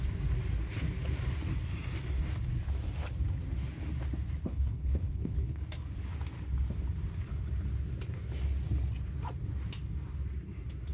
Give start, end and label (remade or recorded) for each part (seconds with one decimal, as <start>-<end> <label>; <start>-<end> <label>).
0.0-4.5 recorded; 4.5-5.6 remade; 5.6-10.9 recorded